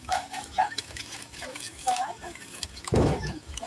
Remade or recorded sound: remade